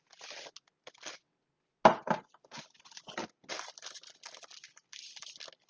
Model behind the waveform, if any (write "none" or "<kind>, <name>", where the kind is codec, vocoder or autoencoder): none